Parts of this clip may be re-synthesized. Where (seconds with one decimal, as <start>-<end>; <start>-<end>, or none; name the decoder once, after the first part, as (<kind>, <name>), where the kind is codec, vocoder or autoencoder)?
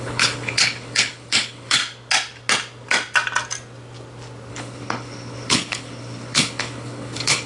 0.0-1.8 (codec, HILCodec); 4.5-7.5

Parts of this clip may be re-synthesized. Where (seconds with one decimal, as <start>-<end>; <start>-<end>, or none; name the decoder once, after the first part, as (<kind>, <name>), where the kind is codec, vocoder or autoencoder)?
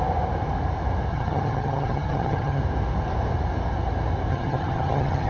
1.1-2.6 (vocoder, HiFi-GAN); 4.3-5.3